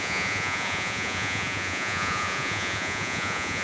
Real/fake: fake